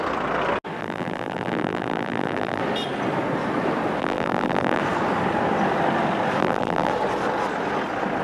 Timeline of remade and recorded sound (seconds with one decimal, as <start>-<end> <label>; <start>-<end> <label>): 0.0-0.8 recorded; 0.8-2.6 remade; 2.6-4.0 recorded; 4.0-4.8 remade; 4.8-6.4 recorded; 6.4-6.9 remade; 6.9-8.2 recorded